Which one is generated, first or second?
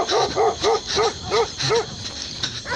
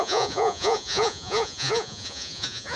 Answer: second